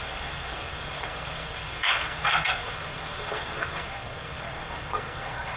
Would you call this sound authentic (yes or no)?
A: no